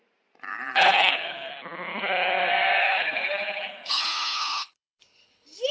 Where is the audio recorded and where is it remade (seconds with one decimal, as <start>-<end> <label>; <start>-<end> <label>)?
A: 0.0-0.5 recorded; 0.5-1.5 remade; 1.5-2.8 recorded; 2.8-5.7 remade